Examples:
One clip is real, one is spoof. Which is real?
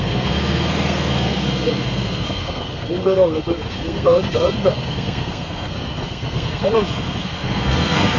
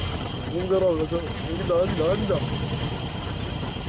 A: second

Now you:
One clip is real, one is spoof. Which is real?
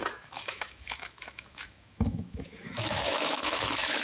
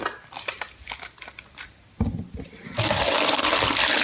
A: second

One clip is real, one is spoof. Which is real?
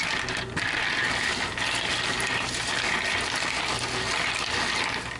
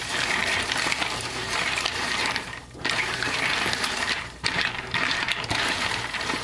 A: first